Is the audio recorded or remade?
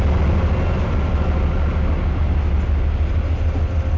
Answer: recorded